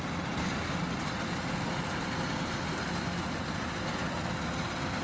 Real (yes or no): yes